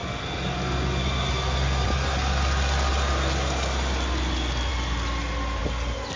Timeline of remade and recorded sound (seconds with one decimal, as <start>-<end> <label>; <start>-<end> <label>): 0.0-6.2 recorded